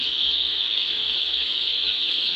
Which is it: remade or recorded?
remade